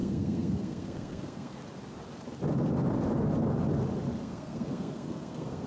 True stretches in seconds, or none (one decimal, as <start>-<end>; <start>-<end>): 1.6-4.2